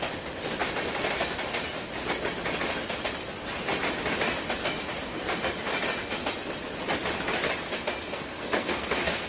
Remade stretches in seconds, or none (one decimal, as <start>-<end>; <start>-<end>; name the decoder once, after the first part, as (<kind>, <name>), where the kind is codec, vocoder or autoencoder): 8.1-9.3 (codec, SNAC)